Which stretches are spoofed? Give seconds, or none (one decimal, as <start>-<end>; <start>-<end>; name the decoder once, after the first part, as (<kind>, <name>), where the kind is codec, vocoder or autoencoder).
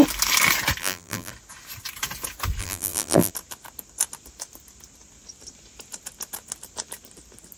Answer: 0.8-1.3 (vocoder, BigVGAN v2); 2.6-3.3